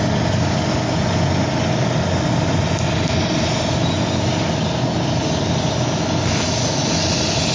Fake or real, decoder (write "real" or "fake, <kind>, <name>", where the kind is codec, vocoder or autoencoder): real